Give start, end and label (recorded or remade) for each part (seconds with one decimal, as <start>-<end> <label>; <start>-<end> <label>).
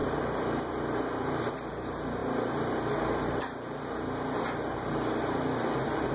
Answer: 0.0-6.1 recorded